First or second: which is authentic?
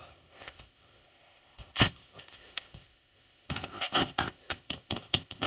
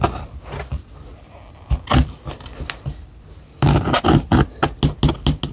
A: second